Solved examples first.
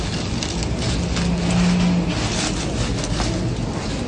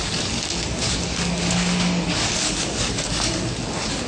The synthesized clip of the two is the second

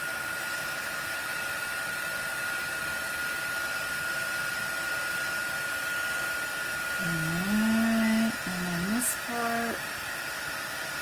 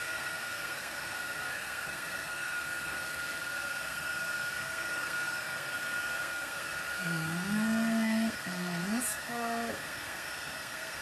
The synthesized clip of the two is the second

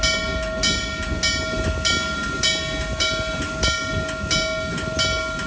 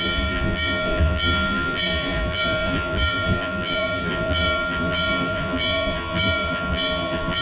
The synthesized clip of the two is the second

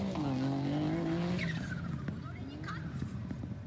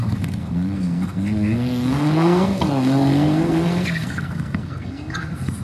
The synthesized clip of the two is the second